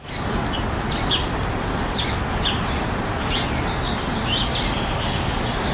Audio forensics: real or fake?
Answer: real